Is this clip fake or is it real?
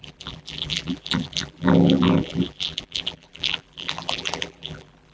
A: fake